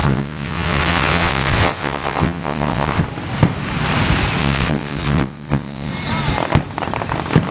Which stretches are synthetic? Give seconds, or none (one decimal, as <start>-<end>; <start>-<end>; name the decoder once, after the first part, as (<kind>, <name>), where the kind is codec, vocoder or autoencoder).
0.0-3.0 (vocoder, WaveNeXt); 4.4-5.9